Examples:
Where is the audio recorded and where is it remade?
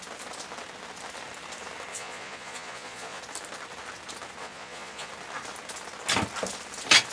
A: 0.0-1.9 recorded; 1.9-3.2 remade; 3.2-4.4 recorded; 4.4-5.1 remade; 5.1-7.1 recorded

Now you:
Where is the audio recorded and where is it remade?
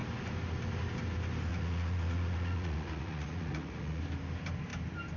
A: 0.0-1.5 recorded; 1.5-4.0 remade; 4.0-5.2 recorded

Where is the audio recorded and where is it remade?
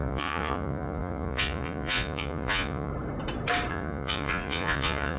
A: 0.0-2.9 remade; 2.9-3.7 recorded; 3.7-5.2 remade